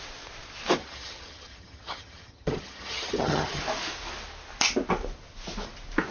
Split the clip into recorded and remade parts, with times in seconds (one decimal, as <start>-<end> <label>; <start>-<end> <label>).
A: 0.0-0.8 recorded; 0.8-3.6 remade; 3.6-6.1 recorded

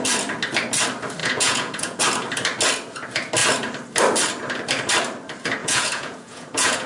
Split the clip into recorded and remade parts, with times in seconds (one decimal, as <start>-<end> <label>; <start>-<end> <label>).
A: 0.0-1.2 recorded; 1.2-2.0 remade; 2.0-5.6 recorded; 5.6-6.9 remade

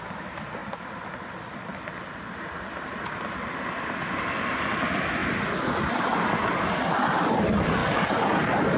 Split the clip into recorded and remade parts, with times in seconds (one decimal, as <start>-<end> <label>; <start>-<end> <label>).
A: 0.0-8.8 recorded

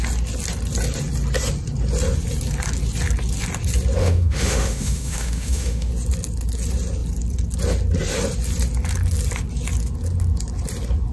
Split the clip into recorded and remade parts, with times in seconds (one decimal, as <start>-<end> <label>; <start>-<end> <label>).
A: 0.0-4.0 recorded; 4.0-5.9 remade; 5.9-11.1 recorded

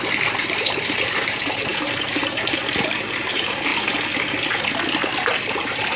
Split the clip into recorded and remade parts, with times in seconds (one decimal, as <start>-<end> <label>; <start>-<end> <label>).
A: 0.0-2.7 remade; 2.7-3.3 recorded; 3.3-3.7 remade; 3.7-5.5 recorded; 5.5-6.0 remade

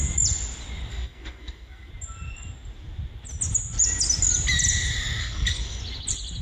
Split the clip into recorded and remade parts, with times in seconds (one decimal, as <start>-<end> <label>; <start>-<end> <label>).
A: 0.0-0.9 recorded; 0.9-1.9 remade; 1.9-5.2 recorded; 5.2-5.8 remade; 5.8-6.4 recorded